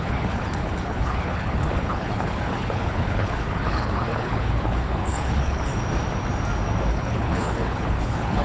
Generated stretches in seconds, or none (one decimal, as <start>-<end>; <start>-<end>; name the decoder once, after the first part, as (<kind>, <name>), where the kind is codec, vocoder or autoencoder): 0.0-5.7 (codec, HILCodec); 6.9-8.4